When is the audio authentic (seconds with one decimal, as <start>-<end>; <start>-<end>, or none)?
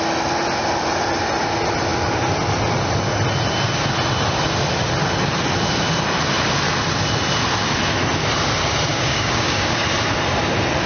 0.0-8.9; 9.8-10.9